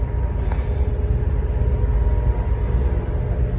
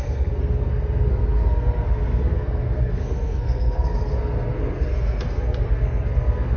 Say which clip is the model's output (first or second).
second